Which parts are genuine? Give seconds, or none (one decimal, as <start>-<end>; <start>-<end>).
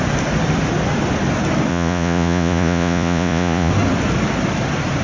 0.0-1.7; 3.7-5.0